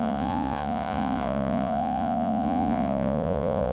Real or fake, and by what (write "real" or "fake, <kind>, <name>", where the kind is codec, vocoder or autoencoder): fake, vocoder, Vocos